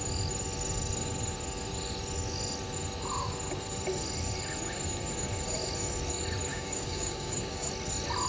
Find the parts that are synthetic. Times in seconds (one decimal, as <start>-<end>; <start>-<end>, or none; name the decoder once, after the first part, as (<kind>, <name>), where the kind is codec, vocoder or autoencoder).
6.5-7.7 (codec, DAC)